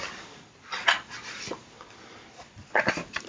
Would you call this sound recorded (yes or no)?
no